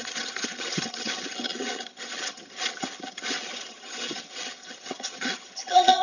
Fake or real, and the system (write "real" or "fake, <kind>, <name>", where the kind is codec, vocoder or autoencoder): fake, vocoder, HiFi-GAN